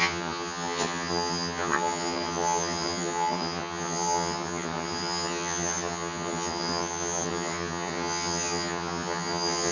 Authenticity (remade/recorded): remade